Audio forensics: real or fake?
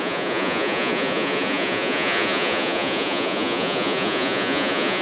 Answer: fake